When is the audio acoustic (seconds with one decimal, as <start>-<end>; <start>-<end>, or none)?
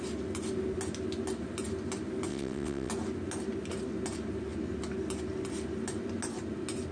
0.0-2.3; 2.9-6.9